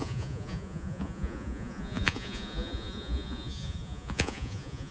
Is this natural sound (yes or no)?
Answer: no